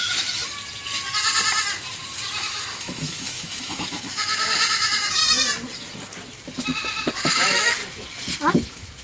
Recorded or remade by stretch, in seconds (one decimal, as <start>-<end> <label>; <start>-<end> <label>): 0.0-0.4 remade; 0.4-2.4 recorded; 2.4-5.2 remade; 5.2-7.1 recorded; 7.1-7.8 remade; 7.8-8.5 recorded; 8.5-9.0 remade

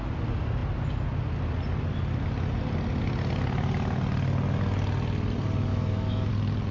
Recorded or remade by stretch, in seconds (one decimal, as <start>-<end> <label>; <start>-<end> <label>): 0.0-5.7 recorded; 5.7-6.3 remade; 6.3-6.7 recorded

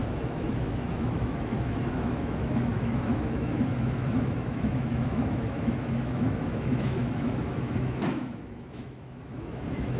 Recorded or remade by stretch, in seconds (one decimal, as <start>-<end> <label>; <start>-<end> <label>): 0.0-10.0 remade

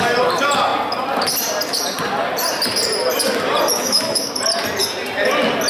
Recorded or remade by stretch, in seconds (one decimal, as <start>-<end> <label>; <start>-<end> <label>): 0.0-3.7 recorded; 3.7-4.3 remade; 4.3-5.7 recorded

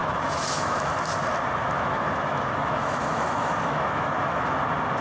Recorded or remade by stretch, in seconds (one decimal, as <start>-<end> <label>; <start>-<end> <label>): 0.0-0.9 remade; 0.9-1.6 recorded; 1.6-4.6 remade; 4.6-5.0 recorded

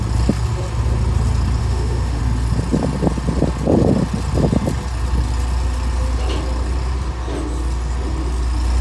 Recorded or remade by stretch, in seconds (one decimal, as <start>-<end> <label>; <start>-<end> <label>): 0.0-1.6 recorded; 1.6-2.2 remade; 2.2-8.8 recorded

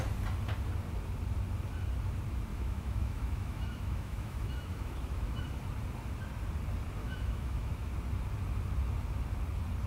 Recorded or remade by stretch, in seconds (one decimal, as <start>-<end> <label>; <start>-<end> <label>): 0.0-2.5 recorded; 2.5-5.4 remade; 5.4-7.0 recorded; 7.0-7.9 remade; 7.9-9.9 recorded

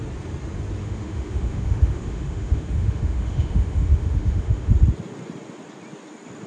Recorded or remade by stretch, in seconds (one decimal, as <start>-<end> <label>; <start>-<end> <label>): 0.0-0.8 recorded; 0.8-4.7 remade; 4.7-6.5 recorded